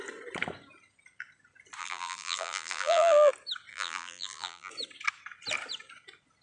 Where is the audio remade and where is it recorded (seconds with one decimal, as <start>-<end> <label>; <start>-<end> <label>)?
0.0-1.8 recorded; 1.8-3.3 remade; 3.3-3.7 recorded; 3.7-4.7 remade; 4.7-6.4 recorded